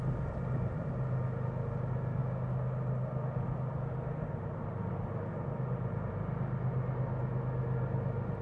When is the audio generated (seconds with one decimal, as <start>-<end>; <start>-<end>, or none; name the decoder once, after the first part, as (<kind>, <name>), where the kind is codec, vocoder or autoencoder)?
none

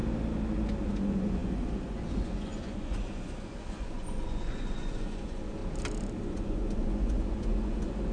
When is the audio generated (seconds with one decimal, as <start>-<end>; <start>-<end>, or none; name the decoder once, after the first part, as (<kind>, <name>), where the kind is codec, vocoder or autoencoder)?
0.9-5.6 (vocoder, Vocos); 6.2-8.1

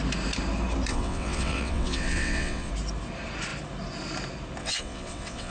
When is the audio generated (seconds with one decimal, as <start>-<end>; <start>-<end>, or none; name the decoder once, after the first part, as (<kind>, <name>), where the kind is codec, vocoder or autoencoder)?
0.9-2.7 (vocoder, WaveNeXt); 4.6-5.5

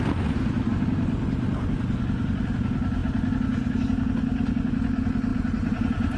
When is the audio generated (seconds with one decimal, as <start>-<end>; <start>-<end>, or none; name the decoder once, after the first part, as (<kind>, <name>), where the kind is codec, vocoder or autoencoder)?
5.3-6.2 (vocoder, BigVGAN v2)